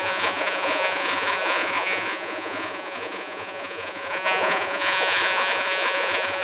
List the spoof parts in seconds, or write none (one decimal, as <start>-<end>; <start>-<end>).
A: 0.0-6.4